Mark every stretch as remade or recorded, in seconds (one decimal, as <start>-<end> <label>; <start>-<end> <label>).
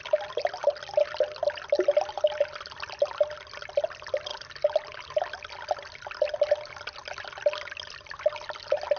0.0-9.0 recorded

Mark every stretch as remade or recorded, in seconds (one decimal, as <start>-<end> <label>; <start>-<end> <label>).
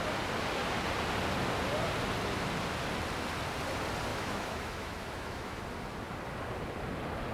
0.0-4.1 recorded; 4.1-5.6 remade; 5.6-7.3 recorded